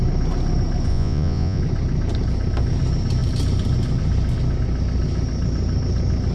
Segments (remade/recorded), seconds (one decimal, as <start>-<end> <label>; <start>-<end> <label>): 0.0-0.9 recorded; 0.9-1.6 remade; 1.6-6.3 recorded